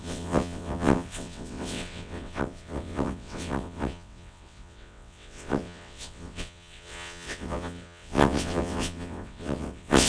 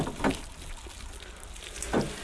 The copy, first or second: first